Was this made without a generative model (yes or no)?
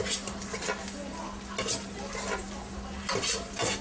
yes